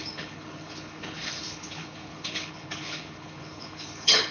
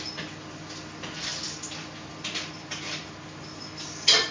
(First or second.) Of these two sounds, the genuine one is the second